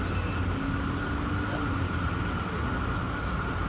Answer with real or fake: real